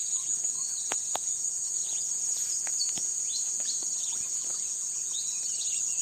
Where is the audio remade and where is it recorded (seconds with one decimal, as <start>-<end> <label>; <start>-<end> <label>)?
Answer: 0.0-6.0 remade